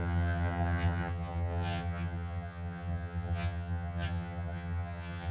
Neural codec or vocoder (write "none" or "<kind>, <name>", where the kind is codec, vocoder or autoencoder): vocoder, HiFi-GAN